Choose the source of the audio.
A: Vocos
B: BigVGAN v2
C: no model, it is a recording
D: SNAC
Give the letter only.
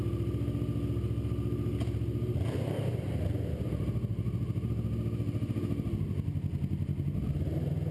C